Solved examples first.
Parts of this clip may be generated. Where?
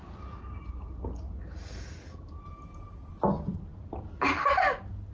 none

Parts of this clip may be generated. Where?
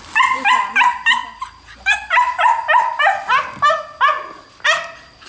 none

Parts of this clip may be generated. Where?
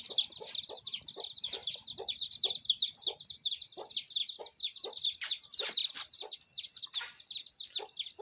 none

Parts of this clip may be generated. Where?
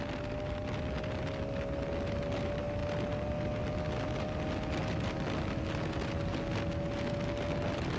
none